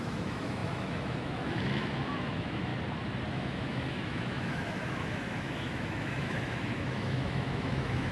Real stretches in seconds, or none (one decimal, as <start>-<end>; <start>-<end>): 2.7-3.3